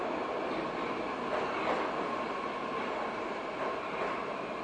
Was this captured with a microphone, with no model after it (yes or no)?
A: yes